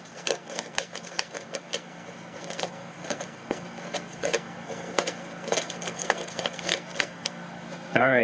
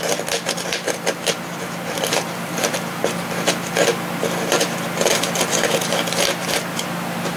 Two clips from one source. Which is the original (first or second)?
second